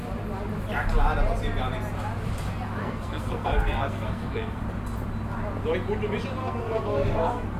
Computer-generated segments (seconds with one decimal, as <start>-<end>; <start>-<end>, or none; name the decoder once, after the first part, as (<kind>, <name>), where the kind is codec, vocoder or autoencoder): 2.8-4.6 (codec, SNAC); 6.4-7.6

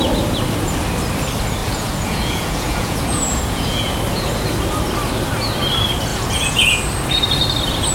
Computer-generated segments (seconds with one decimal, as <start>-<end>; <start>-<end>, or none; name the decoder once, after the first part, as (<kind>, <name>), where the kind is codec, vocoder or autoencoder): 1.6-3.9 (vocoder, Vocos); 6.1-6.8

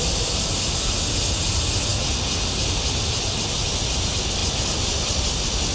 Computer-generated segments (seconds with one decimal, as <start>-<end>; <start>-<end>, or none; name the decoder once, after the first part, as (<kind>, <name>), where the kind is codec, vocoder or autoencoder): none